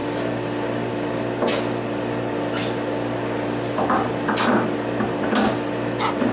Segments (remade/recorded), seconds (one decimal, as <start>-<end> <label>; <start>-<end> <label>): 0.0-6.3 recorded